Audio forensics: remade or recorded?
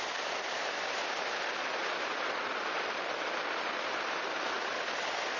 remade